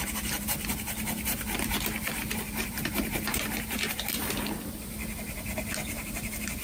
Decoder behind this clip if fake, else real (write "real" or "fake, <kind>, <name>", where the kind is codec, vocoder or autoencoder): fake, vocoder, BigVGAN v2